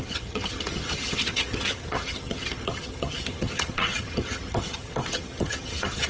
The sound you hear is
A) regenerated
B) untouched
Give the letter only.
A